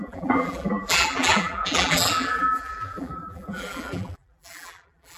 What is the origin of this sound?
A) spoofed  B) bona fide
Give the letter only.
A